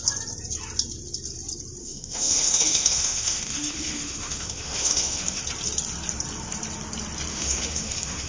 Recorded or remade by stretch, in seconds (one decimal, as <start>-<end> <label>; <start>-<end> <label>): 0.0-1.8 recorded; 1.8-5.4 remade; 5.4-7.3 recorded; 7.3-8.3 remade